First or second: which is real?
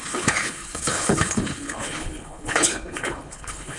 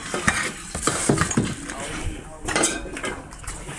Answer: second